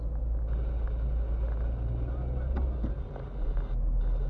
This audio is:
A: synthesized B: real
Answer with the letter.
B